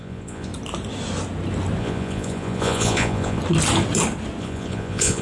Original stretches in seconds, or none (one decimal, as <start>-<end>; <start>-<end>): 0.5-1.8; 3.4-4.4

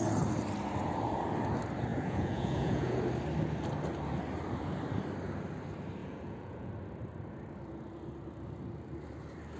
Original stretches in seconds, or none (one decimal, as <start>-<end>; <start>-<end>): 0.0-1.9; 3.0-6.0; 6.7-9.6